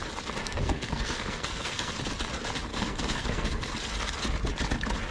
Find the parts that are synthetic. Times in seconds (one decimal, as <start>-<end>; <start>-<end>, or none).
0.4-1.9; 2.7-3.7